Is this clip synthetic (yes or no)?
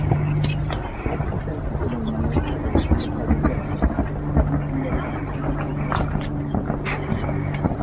no